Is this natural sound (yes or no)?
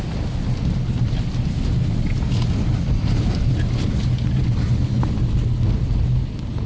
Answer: yes